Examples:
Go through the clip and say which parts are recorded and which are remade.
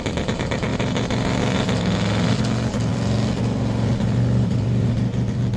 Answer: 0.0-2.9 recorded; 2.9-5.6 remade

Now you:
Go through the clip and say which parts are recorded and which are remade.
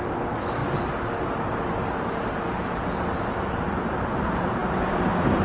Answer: 0.0-0.6 remade; 0.6-3.8 recorded; 3.8-4.6 remade; 4.6-5.4 recorded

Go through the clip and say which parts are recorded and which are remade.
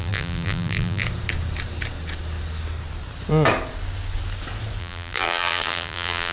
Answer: 0.0-1.0 remade; 1.0-4.8 recorded; 4.8-6.3 remade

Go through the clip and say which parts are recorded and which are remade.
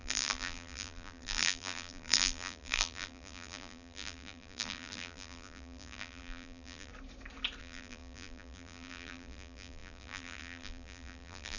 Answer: 0.0-6.9 remade; 6.9-7.6 recorded; 7.6-11.6 remade